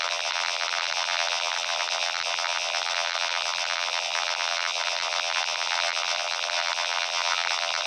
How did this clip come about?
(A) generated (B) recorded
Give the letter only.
A